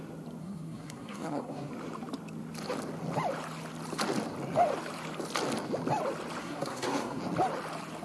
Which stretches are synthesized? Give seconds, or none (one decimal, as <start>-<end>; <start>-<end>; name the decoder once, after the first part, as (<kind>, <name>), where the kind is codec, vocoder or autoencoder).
0.4-1.7 (codec, SNAC); 6.4-7.2